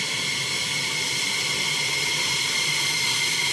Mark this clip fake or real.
fake